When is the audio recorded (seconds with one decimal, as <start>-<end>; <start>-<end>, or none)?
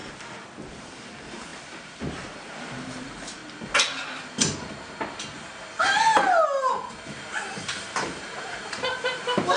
0.0-0.7; 3.4-6.9